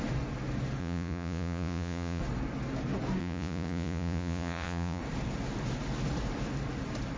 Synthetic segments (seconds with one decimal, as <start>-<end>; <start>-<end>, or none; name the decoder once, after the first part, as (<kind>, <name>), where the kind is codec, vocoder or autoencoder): 0.8-2.2 (vocoder, Vocos); 3.2-5.0